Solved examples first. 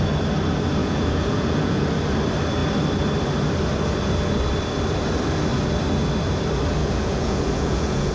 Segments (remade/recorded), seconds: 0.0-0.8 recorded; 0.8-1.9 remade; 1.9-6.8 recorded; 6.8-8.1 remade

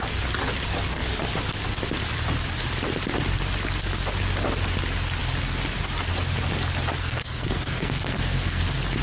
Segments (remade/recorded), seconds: 0.0-7.0 recorded; 7.0-8.6 remade; 8.6-9.0 recorded